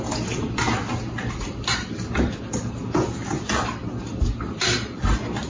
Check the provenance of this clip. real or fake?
real